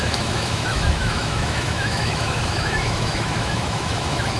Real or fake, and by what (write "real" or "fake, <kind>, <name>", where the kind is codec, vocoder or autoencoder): fake, autoencoder, DAC-VAE